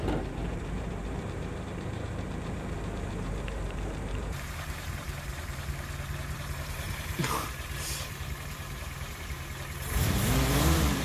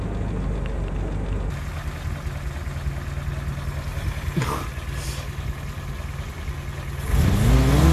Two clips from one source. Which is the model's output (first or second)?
first